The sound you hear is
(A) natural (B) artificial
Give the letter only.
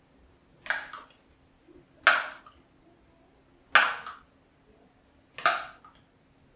A